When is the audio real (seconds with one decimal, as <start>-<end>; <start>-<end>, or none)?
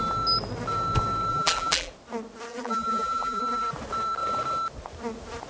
0.0-1.3; 1.9-2.5; 3.4-5.5